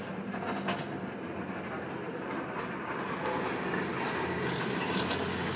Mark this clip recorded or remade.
recorded